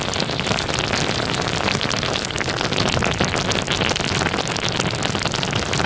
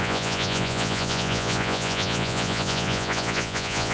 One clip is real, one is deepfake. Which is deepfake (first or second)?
second